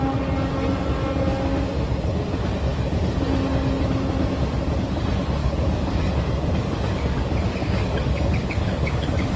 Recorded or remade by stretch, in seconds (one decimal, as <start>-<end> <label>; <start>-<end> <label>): 0.0-5.4 recorded; 5.4-6.1 remade; 6.1-7.6 recorded; 7.6-9.4 remade